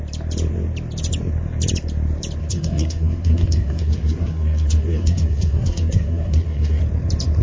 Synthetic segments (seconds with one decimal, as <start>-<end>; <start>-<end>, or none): 2.4-6.8